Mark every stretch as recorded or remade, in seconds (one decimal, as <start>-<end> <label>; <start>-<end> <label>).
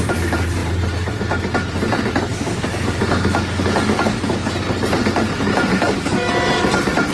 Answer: 0.0-2.3 recorded; 2.3-4.5 remade; 4.5-5.7 recorded; 5.7-6.3 remade; 6.3-7.1 recorded